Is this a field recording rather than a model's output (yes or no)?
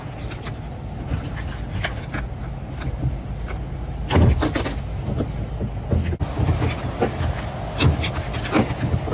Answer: yes